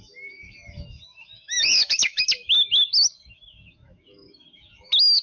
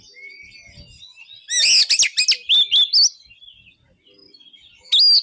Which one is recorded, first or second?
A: second